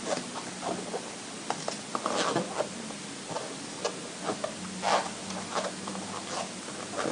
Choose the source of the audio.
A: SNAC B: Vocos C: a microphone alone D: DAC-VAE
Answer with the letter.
C